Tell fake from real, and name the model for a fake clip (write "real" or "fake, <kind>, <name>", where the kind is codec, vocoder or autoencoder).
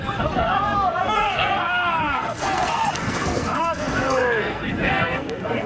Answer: fake, codec, SNAC